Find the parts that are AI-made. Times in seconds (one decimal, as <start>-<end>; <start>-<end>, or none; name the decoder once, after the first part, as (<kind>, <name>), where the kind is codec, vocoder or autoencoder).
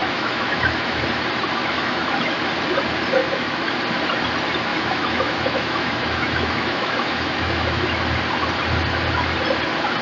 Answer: 0.0-1.0 (autoencoder, DAC-VAE); 1.6-2.4; 3.2-3.7; 4.7-7.8